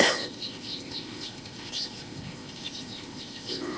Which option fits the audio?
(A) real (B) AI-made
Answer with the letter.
B